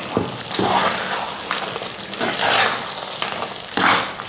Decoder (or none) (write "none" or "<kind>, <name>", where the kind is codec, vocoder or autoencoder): none